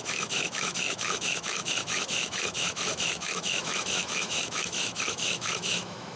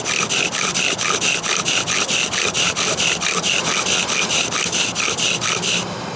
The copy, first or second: first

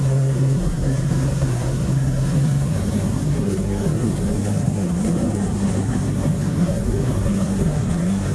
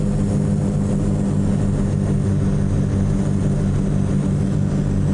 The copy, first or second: first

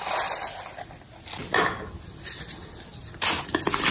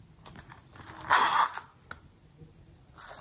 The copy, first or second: second